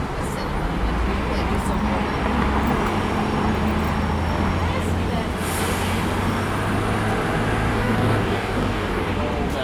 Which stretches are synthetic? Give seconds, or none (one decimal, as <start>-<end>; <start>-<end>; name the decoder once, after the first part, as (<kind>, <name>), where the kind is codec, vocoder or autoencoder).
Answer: 7.7-9.1 (codec, DAC)

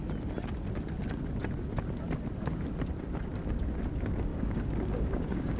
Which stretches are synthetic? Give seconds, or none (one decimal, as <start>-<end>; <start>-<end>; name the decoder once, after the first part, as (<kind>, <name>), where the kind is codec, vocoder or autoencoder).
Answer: 4.3-5.6 (codec, DAC)

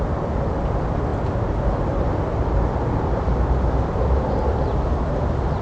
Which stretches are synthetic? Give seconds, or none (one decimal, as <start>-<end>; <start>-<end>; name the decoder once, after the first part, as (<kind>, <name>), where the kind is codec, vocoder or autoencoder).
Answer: none